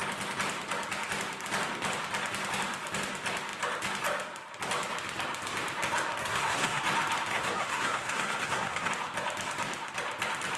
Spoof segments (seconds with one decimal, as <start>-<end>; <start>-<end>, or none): 6.2-6.8; 7.3-8.9